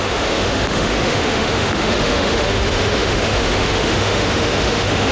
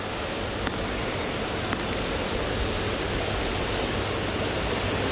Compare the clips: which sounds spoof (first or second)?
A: first